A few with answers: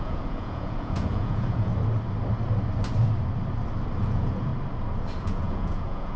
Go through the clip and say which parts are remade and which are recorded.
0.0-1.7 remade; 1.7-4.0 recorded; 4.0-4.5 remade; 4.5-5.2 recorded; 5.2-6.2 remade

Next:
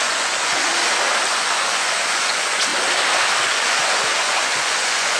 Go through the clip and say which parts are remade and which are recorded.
0.0-0.7 remade; 0.7-1.3 recorded; 1.3-2.7 remade; 2.7-3.4 recorded; 3.4-5.2 remade

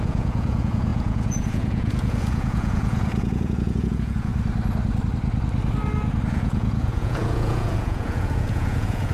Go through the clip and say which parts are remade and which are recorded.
0.0-4.3 remade; 4.3-6.3 recorded; 6.3-9.1 remade

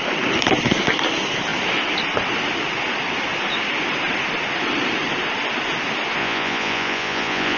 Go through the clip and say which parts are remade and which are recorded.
0.0-6.2 recorded; 6.2-7.6 remade

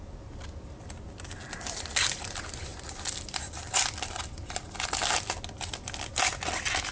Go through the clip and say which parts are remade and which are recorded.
0.0-6.9 recorded